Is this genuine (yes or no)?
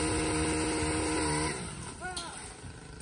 yes